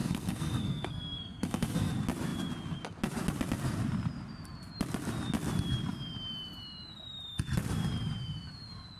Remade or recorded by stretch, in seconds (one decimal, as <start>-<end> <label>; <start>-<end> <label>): 0.0-1.9 remade; 1.9-9.0 recorded